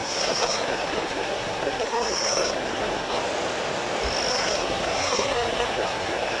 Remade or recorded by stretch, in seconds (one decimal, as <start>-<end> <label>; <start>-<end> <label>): 0.0-3.2 remade; 3.2-4.3 recorded; 4.3-6.4 remade